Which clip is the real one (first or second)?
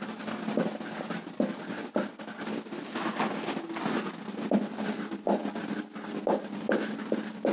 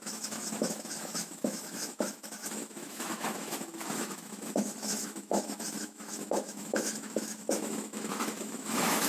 first